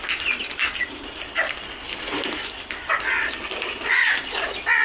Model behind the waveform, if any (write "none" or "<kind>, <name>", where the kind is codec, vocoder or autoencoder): none